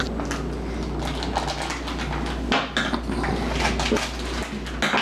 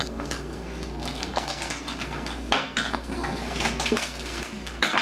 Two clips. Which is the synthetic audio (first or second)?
second